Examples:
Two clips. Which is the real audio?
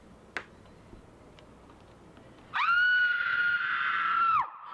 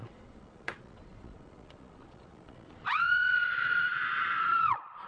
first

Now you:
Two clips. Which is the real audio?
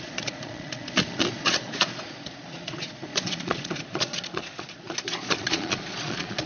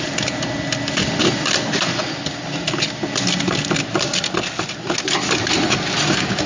second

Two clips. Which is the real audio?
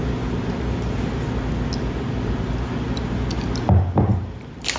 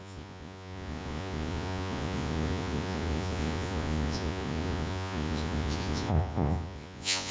first